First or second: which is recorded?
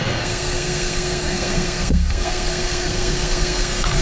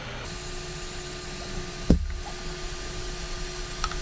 second